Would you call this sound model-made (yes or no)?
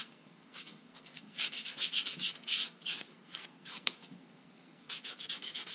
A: yes